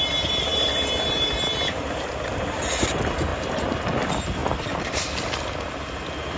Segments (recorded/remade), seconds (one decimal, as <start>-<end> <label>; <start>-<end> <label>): 0.0-3.3 remade; 3.3-4.0 recorded; 4.0-6.4 remade